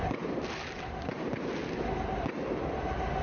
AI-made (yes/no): no